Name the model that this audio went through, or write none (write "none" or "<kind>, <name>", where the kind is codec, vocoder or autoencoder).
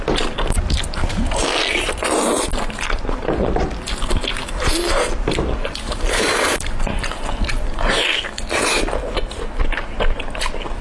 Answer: none